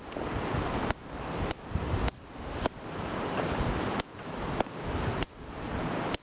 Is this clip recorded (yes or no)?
yes